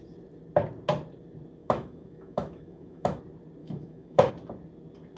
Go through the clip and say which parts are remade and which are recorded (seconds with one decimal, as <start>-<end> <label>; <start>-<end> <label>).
0.0-1.6 recorded; 1.6-3.2 remade; 3.2-3.6 recorded; 3.6-4.3 remade; 4.3-5.2 recorded